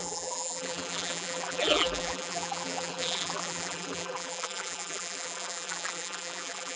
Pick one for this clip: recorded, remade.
remade